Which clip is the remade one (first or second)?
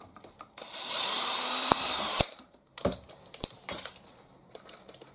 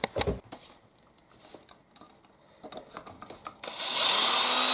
first